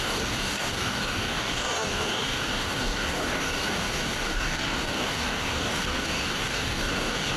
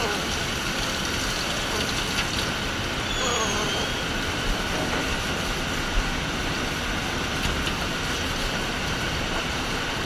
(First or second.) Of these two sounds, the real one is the second